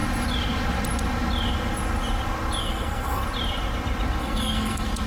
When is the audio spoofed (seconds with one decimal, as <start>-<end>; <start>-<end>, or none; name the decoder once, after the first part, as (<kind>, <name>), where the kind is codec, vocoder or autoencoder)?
2.6-3.2 (codec, SNAC); 4.2-5.1